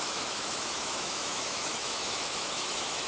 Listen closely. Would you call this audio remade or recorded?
remade